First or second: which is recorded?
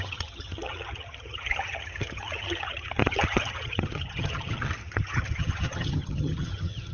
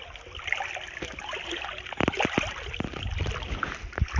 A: second